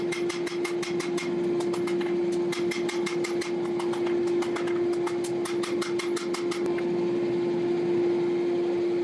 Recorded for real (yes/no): yes